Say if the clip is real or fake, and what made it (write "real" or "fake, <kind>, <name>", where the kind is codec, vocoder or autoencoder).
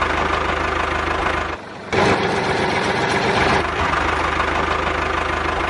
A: real